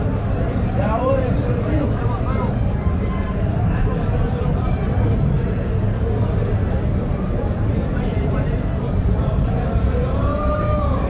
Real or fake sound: fake